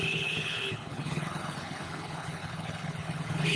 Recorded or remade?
remade